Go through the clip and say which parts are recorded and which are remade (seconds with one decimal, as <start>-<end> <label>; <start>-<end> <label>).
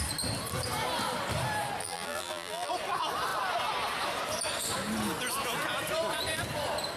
0.0-1.8 recorded; 1.8-2.7 remade; 2.7-7.0 recorded